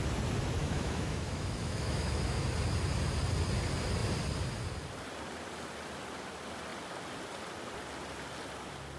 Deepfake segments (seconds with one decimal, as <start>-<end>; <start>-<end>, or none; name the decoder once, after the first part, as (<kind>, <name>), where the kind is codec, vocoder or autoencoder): 0.6-2.4 (autoencoder, DAC-VAE)